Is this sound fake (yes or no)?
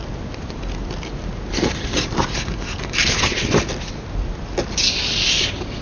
no